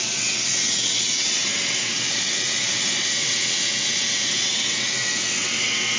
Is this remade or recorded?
remade